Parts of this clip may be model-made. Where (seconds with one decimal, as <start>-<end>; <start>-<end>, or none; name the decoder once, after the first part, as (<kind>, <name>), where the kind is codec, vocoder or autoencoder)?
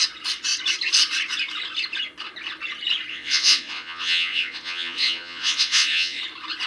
3.1-6.2 (vocoder, Vocos)